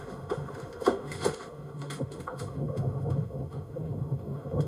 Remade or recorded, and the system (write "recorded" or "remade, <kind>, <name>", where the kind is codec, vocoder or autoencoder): remade, autoencoder, DAC-VAE